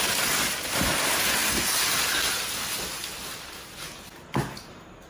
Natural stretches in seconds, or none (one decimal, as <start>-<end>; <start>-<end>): 0.0-5.1